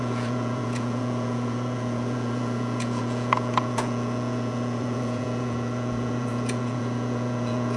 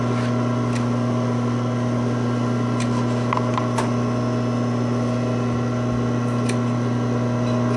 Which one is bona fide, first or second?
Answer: second